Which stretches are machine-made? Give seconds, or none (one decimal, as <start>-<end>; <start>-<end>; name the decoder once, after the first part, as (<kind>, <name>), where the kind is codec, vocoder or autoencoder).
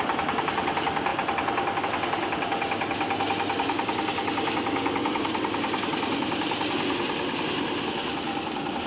none